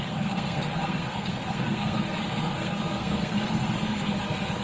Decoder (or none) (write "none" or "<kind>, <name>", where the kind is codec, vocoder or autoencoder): codec, SNAC